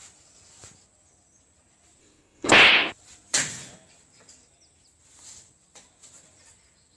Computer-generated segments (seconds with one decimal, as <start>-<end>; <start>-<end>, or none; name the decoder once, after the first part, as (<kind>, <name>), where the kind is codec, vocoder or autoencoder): 2.0-2.5 (codec, SNAC)